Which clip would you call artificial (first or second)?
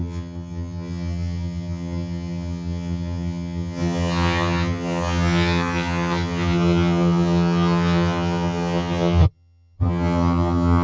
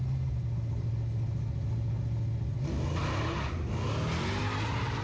first